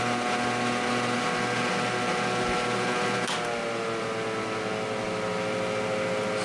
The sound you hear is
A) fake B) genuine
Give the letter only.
B